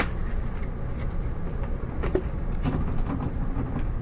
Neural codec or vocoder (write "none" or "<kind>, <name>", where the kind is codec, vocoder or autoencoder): none